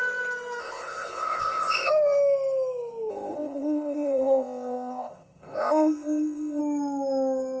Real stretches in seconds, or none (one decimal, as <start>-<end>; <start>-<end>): 0.0-0.6; 1.9-3.1; 6.6-7.6